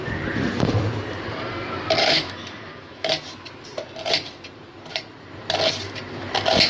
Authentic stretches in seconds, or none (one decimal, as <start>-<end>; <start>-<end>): 0.0-2.0; 3.1-6.7